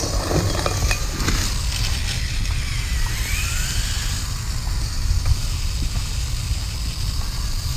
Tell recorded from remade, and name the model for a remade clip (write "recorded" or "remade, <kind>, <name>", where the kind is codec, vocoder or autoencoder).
recorded